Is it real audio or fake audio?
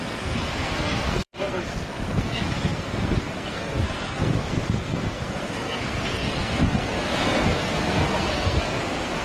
fake